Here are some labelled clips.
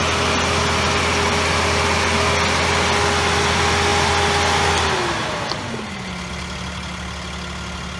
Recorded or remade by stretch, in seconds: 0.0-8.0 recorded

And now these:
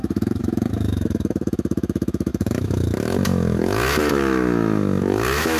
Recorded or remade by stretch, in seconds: 0.0-5.6 remade

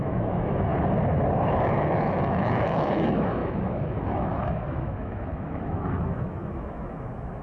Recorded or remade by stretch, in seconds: 0.0-0.7 remade; 0.7-1.4 recorded; 1.4-7.4 remade

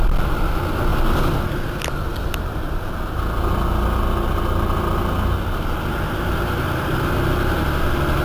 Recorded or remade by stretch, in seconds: 0.0-8.2 recorded

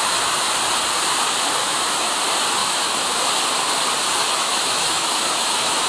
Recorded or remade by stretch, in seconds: 0.0-1.6 recorded; 1.6-2.2 remade; 2.2-2.6 recorded; 2.6-3.3 remade; 3.3-4.2 recorded; 4.2-5.9 remade

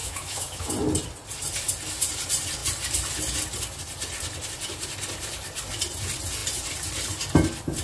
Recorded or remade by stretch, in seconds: 0.0-0.7 remade; 0.7-7.8 recorded

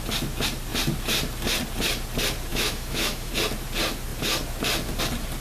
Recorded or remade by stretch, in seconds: 0.0-2.5 recorded; 2.5-3.3 remade; 3.3-5.4 recorded

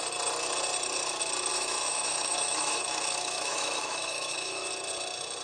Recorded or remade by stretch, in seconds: 0.0-1.5 recorded; 1.5-4.7 remade; 4.7-5.4 recorded